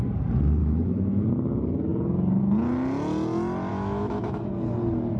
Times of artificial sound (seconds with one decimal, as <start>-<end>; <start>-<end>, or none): 0.6-1.3; 3.7-4.5